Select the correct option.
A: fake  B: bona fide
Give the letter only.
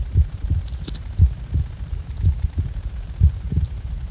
A